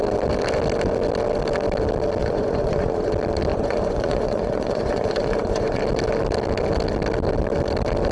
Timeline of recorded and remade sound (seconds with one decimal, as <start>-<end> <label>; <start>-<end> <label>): 0.0-2.2 recorded; 2.2-3.1 remade; 3.1-3.5 recorded; 3.5-5.8 remade; 5.8-8.1 recorded